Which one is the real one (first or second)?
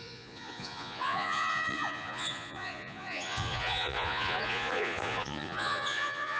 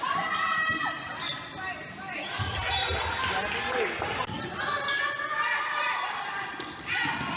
second